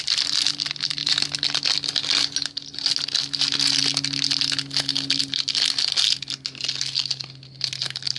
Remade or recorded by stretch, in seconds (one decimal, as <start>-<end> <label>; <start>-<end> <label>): 0.0-8.2 recorded